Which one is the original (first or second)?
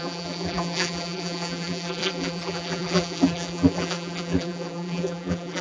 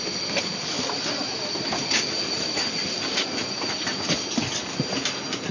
second